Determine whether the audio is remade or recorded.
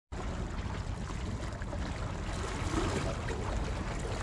recorded